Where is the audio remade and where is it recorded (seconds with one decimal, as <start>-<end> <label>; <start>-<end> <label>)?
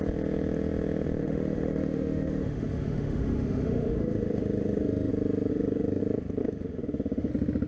0.0-1.2 recorded; 1.2-5.1 remade; 5.1-5.5 recorded; 5.5-6.0 remade; 6.0-6.4 recorded; 6.4-7.3 remade; 7.3-7.7 recorded